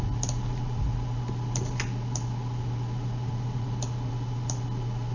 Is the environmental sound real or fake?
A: real